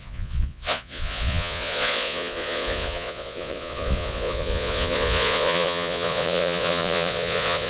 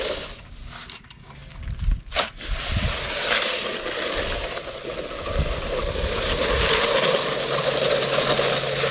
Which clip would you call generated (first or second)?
first